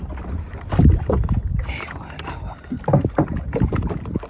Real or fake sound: real